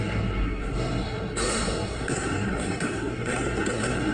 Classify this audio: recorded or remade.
remade